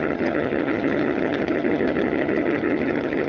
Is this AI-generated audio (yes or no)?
yes